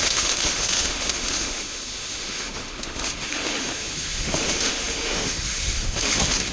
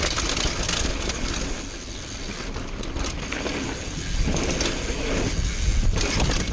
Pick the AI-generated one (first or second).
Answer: first